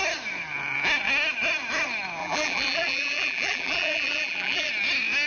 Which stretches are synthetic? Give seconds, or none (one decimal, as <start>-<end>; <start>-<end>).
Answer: 2.2-4.7